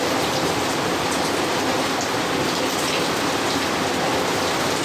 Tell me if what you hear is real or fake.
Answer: real